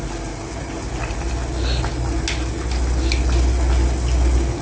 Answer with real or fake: real